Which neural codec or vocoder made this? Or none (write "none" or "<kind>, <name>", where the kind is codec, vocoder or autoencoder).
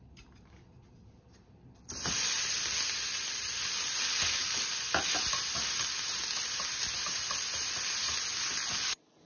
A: none